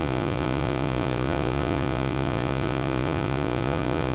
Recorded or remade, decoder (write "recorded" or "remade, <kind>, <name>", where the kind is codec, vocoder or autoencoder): remade, vocoder, Vocos